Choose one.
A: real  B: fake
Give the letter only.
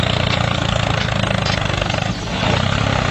A